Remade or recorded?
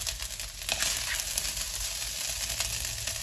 recorded